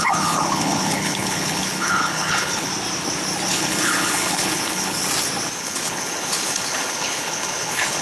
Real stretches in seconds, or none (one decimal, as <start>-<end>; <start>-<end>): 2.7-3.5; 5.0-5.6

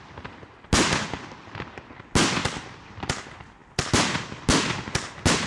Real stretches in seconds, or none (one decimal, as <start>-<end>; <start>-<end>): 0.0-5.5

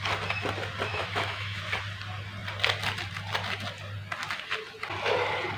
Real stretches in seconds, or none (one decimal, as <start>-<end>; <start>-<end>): 0.0-0.9; 1.6-5.6

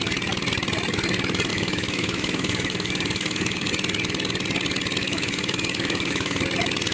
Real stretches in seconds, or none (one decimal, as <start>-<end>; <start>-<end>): 0.0-1.5; 3.7-5.0; 6.4-6.9

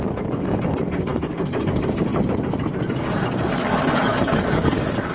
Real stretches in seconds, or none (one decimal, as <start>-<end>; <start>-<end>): 2.1-2.9

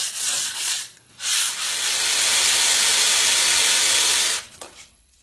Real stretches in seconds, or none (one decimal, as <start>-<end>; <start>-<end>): 1.3-4.4

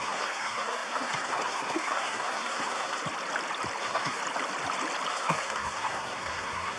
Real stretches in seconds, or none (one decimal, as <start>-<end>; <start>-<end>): 3.0-3.8; 4.2-5.1

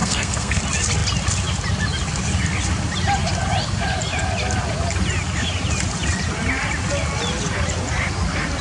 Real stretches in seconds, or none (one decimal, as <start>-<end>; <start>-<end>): 0.6-8.6